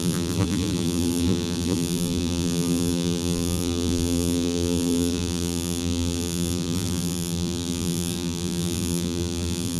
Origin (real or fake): fake